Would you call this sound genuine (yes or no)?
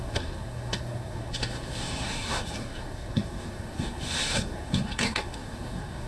no